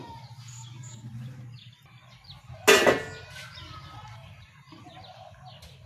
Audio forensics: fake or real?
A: real